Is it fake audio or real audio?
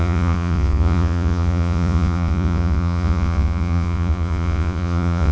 fake